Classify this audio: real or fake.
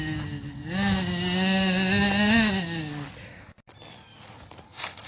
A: real